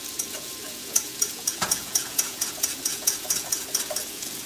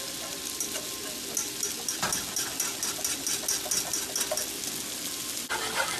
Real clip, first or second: second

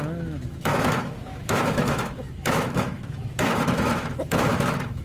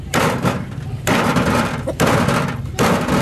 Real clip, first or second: second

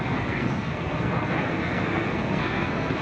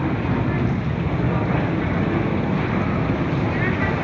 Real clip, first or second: second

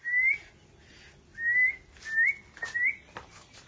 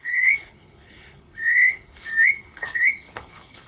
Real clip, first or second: first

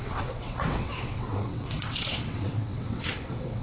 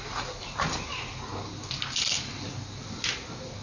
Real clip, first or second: second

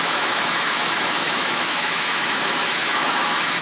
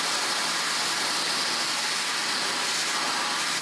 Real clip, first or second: second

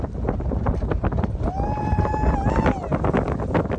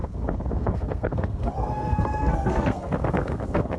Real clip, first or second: first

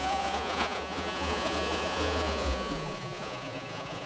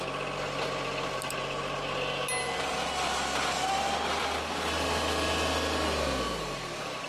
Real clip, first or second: second